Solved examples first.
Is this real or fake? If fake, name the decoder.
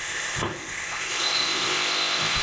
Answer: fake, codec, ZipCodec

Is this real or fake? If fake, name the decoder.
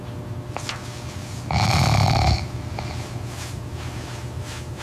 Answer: real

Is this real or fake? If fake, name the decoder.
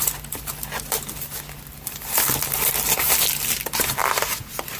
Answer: real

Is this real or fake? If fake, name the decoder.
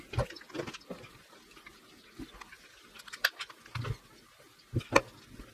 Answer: real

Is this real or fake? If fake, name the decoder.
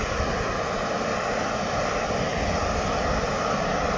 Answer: real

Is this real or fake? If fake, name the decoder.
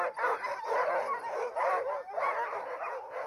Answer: real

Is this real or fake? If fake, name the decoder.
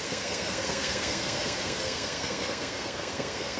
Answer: fake, codec, SNAC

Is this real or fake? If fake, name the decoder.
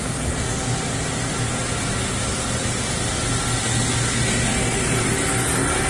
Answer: real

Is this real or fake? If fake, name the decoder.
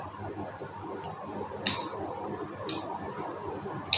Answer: real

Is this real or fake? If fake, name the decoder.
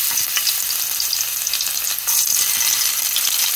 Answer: real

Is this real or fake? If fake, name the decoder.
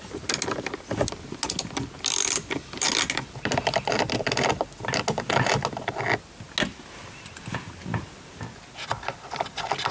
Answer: real